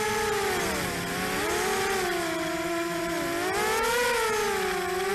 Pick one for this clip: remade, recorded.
recorded